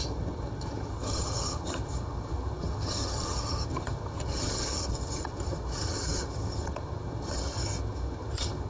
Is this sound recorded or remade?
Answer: remade